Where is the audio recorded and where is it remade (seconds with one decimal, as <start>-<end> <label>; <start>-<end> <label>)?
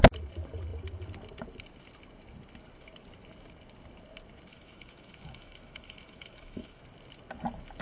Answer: 0.0-4.5 recorded; 4.5-6.8 remade; 6.8-7.8 recorded